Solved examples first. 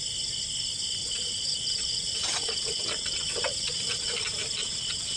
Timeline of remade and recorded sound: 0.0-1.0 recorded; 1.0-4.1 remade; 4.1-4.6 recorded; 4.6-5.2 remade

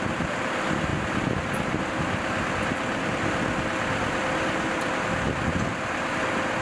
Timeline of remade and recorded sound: 0.0-6.6 recorded

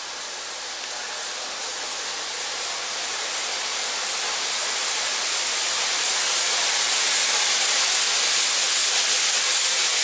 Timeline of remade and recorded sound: 0.0-1.2 recorded; 1.2-6.1 remade; 6.1-10.0 recorded

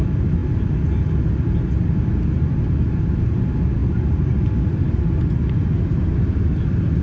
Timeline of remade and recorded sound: 0.0-7.0 recorded

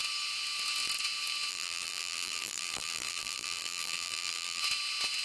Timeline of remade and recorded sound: 0.0-1.5 recorded; 1.5-4.6 remade; 4.6-5.2 recorded

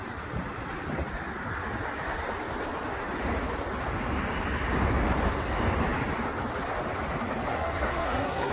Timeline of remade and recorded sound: 0.0-7.5 recorded; 7.5-8.5 remade